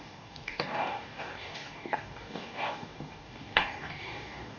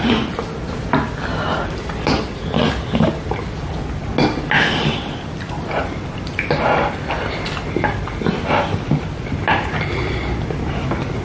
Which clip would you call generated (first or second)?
first